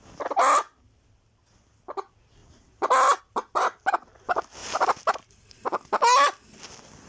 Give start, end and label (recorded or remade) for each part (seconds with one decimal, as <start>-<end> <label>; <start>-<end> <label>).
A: 0.0-4.6 recorded; 4.6-5.6 remade; 5.6-7.1 recorded